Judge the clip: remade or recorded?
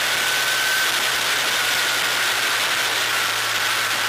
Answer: recorded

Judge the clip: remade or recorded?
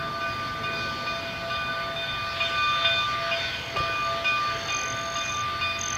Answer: recorded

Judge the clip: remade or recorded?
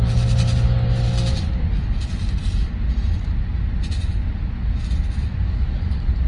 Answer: recorded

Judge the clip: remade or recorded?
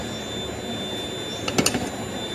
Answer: recorded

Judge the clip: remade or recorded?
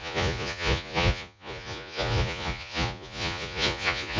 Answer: remade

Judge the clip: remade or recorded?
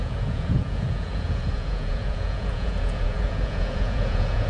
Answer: remade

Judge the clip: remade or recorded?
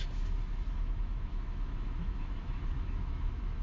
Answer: remade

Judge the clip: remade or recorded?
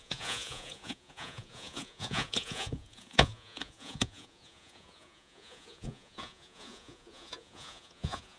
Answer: remade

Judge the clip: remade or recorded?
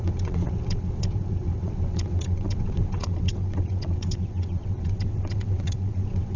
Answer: remade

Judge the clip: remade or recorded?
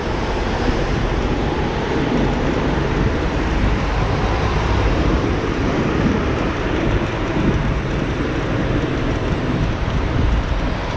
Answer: remade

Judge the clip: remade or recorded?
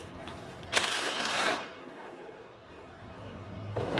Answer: remade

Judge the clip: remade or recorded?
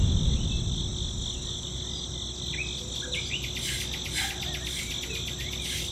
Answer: recorded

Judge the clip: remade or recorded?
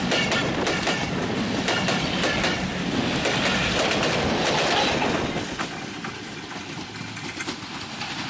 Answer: recorded